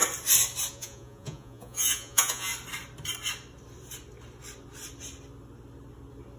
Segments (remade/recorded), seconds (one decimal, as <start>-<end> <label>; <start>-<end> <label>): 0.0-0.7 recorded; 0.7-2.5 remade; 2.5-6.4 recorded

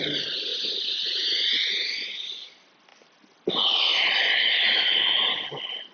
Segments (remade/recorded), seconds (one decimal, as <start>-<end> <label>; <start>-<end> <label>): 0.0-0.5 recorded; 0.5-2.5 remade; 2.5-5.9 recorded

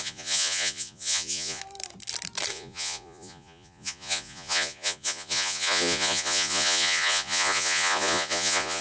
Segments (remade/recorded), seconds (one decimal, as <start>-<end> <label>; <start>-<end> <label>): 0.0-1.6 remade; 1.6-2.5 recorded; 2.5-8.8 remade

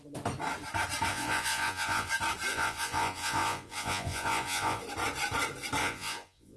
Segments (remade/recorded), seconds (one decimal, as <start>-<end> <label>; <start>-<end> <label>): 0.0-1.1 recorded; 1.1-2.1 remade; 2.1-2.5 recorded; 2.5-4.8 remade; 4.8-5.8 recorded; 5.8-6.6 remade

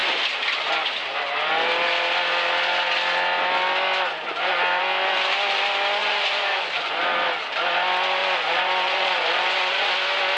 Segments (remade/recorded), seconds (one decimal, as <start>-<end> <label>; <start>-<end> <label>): 0.0-6.0 recorded; 6.0-6.9 remade; 6.9-8.2 recorded; 8.2-9.9 remade; 9.9-10.4 recorded

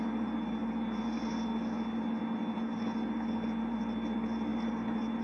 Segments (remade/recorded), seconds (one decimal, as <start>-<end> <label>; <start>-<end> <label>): 0.0-5.2 recorded